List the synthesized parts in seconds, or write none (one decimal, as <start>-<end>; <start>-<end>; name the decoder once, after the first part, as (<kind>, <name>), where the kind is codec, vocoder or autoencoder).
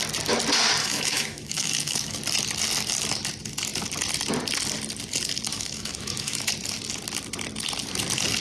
0.8-2.2 (autoencoder, DAC-VAE); 5.5-6.5